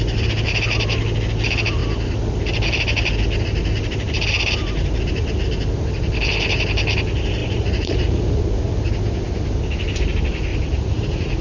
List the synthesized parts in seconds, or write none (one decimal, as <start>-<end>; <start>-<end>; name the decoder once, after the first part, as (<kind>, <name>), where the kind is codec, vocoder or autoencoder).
7.4-8.4 (vocoder, Vocos); 10.5-11.4